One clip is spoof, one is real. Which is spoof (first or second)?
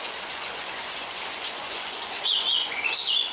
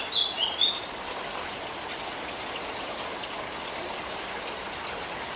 first